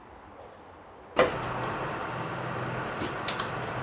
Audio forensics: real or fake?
real